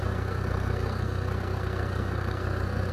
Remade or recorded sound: remade